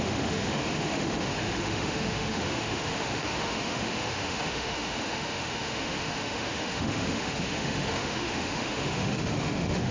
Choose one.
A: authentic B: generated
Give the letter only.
B